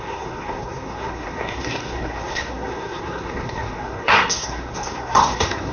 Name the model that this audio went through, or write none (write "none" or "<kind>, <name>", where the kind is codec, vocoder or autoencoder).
codec, SNAC